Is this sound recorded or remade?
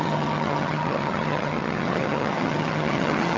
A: remade